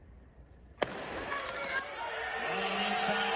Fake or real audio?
real